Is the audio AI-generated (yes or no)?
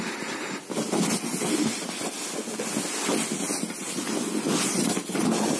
no